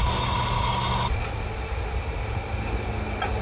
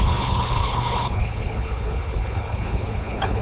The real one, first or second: first